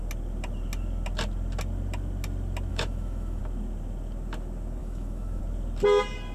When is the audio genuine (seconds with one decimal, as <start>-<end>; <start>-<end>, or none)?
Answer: 0.0-2.7; 3.4-4.8; 5.4-6.3